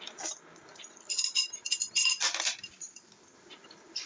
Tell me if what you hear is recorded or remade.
remade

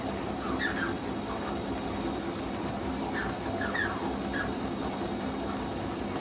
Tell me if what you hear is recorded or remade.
recorded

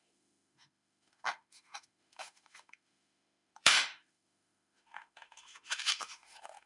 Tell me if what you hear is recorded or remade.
remade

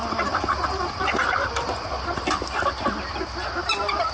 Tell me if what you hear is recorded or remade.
recorded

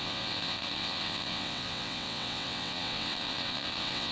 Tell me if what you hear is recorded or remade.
remade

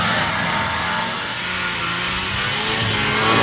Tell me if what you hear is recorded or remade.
recorded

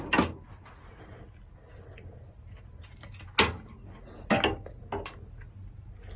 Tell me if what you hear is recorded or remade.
recorded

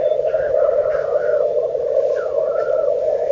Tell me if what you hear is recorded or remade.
recorded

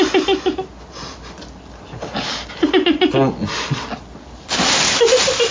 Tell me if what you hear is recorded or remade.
recorded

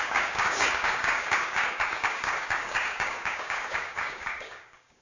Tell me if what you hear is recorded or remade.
remade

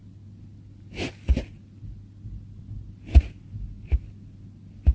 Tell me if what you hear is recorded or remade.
recorded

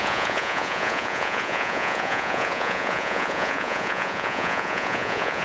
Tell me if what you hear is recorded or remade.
remade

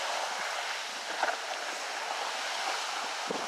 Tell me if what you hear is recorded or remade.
recorded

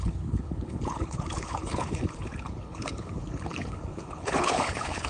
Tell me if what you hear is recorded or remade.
remade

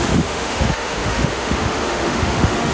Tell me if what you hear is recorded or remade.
remade